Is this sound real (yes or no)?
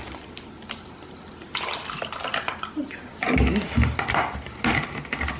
yes